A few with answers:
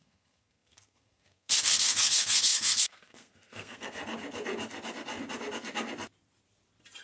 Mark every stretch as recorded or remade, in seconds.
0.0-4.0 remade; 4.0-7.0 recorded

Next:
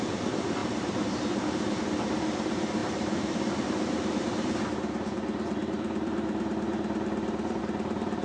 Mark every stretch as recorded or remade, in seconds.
0.0-8.2 remade